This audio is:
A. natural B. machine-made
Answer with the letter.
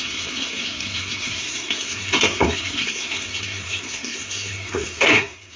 B